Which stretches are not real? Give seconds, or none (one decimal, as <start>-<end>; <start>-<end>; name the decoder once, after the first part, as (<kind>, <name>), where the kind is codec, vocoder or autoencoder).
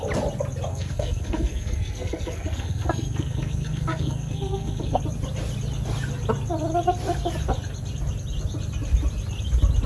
0.7-5.0 (codec, SNAC)